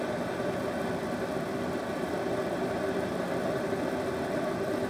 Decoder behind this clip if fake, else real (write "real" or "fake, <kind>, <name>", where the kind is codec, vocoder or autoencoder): real